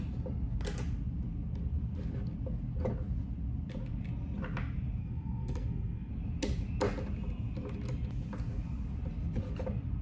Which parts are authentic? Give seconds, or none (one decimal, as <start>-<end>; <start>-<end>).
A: 0.0-5.0; 6.1-10.0